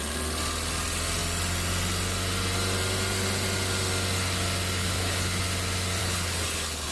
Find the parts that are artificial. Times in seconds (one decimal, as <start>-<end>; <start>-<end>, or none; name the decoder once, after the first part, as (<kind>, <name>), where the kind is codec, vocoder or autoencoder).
4.8-5.4 (codec, HILCodec); 6.0-6.9